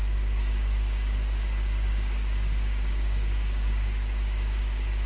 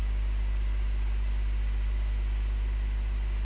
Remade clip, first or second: first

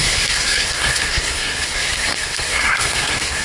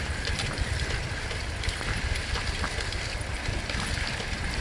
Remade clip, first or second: first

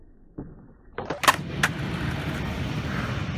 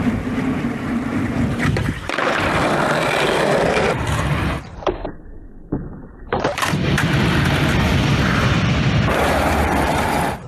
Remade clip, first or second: second